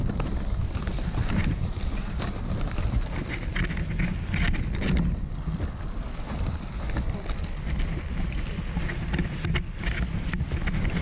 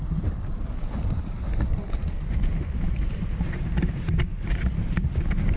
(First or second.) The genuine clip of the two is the first